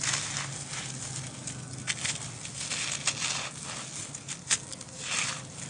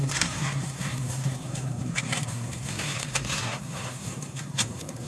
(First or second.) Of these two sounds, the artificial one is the second